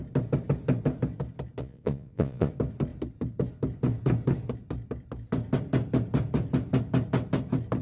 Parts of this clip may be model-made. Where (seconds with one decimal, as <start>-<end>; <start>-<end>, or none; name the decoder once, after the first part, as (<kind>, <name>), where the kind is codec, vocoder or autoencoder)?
1.6-2.5 (vocoder, Vocos)